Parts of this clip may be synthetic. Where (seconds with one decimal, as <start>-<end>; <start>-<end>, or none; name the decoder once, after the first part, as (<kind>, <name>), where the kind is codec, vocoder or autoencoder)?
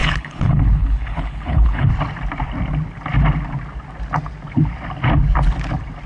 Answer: 0.0-1.9 (codec, HILCodec)